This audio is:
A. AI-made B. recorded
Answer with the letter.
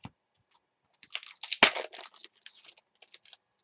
B